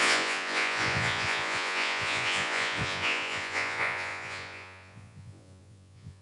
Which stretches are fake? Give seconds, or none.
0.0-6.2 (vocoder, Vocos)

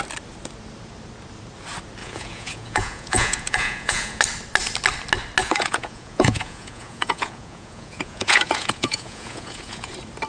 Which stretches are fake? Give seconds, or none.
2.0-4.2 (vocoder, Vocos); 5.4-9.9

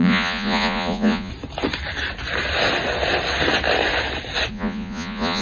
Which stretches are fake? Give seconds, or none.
0.0-1.3 (vocoder, Vocos); 4.5-5.4